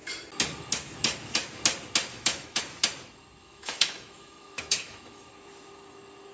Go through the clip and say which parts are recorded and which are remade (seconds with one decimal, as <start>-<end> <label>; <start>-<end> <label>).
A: 0.0-2.1 recorded; 2.1-2.6 remade; 2.6-3.4 recorded; 3.4-5.3 remade; 5.3-6.3 recorded